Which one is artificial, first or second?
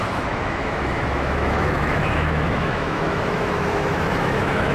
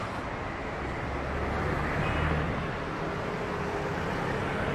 first